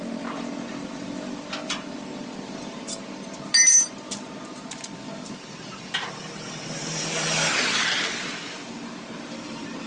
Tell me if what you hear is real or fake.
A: real